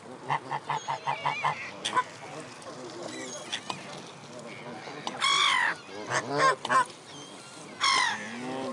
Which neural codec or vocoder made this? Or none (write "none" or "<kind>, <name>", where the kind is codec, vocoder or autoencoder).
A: none